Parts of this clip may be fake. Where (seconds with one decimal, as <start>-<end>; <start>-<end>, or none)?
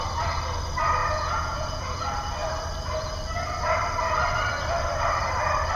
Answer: 1.0-2.0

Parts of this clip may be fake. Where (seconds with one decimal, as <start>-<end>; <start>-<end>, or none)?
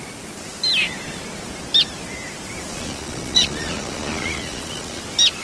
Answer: 2.7-5.0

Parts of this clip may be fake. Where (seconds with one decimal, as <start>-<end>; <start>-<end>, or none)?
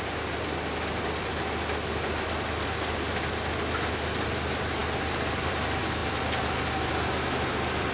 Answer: none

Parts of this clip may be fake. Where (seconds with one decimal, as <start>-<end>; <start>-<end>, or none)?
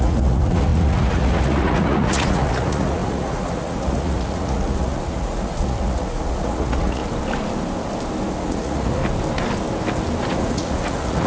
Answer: 0.0-7.0; 8.3-9.0; 10.3-11.3